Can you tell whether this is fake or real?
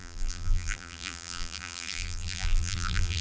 fake